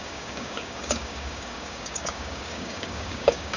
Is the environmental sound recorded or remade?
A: remade